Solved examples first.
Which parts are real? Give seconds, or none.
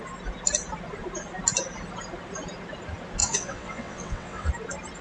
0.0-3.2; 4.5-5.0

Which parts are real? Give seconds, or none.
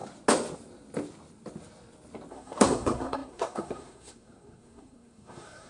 0.0-2.3